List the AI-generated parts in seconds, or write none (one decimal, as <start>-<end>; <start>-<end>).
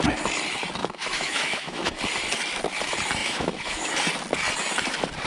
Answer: 0.8-2.0; 3.2-3.9